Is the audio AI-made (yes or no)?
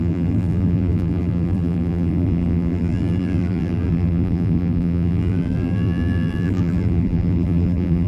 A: yes